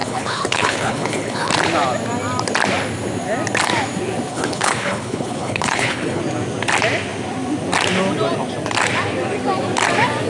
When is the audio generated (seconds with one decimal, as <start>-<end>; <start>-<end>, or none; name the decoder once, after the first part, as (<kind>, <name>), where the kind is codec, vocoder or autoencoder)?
0.0-1.5 (codec, HILCodec); 4.3-6.2